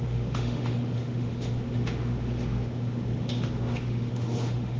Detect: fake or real fake